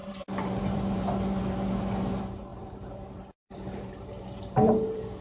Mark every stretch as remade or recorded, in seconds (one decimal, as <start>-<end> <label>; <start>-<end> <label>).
0.0-5.2 remade